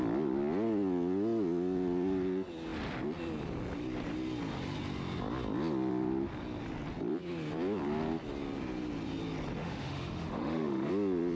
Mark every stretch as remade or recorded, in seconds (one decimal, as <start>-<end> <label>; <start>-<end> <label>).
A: 0.0-9.6 recorded; 9.6-10.9 remade; 10.9-11.4 recorded